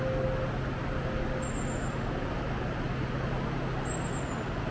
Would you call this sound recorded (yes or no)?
yes